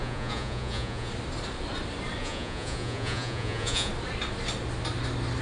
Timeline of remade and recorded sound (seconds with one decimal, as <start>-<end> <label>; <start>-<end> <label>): 0.0-1.1 remade; 1.1-2.2 recorded; 2.2-3.9 remade; 3.9-5.4 recorded